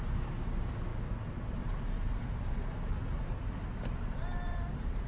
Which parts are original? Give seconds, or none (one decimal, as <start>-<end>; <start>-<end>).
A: 0.9-4.0